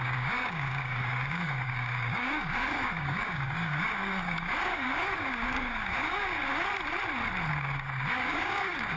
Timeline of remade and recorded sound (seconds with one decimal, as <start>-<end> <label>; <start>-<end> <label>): 0.0-6.5 remade; 6.5-7.5 recorded; 7.5-9.0 remade